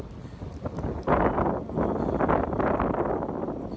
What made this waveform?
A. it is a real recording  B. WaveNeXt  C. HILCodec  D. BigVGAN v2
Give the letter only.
A